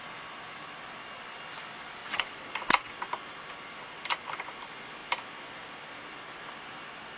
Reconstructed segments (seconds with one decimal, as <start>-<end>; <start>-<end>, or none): 2.0-2.5